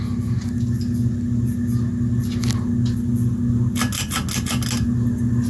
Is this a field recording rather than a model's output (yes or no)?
yes